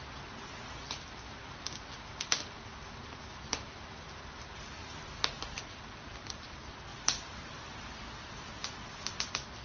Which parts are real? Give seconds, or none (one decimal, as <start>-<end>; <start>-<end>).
0.0-4.8; 6.5-6.9; 7.7-9.6